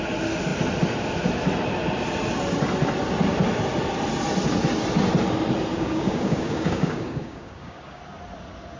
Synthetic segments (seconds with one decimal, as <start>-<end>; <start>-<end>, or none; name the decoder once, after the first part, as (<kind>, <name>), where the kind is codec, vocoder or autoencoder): 5.7-8.0 (codec, DAC)